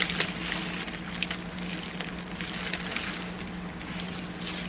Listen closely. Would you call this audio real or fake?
real